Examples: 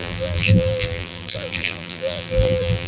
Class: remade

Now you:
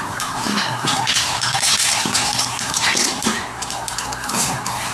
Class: remade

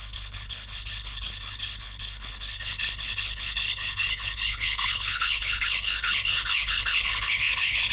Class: remade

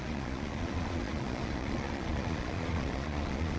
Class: remade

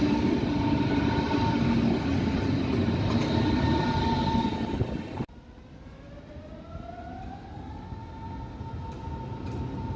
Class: recorded